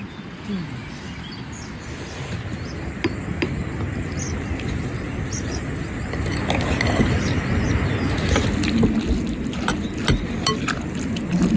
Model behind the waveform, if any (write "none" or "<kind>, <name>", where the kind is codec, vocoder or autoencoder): none